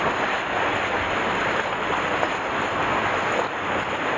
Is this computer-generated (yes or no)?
no